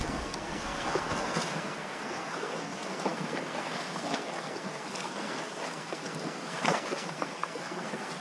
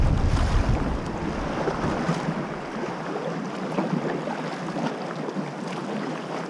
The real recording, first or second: second